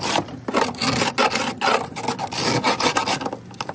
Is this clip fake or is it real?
real